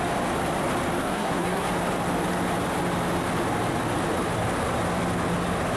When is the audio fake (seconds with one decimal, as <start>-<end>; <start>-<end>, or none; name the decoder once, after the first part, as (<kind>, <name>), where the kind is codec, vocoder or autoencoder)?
1.0-1.7 (codec, SNAC)